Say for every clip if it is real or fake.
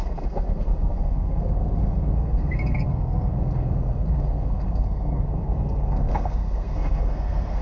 fake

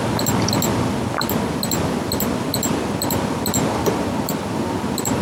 fake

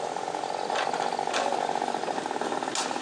real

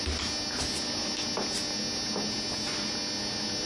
real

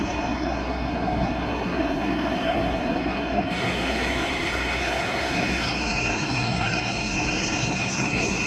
fake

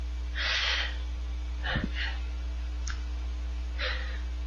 real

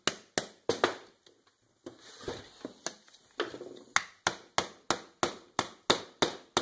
real